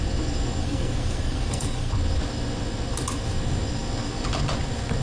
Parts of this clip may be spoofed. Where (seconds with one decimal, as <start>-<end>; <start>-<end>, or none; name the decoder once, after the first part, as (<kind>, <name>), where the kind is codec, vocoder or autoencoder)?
0.6-1.9 (codec, SNAC)